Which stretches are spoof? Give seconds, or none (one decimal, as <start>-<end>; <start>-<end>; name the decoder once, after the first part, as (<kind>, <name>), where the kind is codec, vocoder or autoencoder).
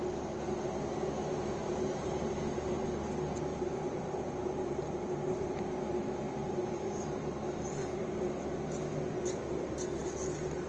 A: 1.6-2.7 (vocoder, BigVGAN v2); 3.5-5.7; 6.4-8.1